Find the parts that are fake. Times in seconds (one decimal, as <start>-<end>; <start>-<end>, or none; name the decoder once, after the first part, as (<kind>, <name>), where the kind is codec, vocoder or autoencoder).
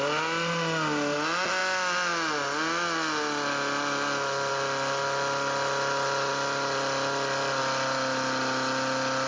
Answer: none